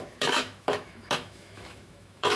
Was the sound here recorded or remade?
remade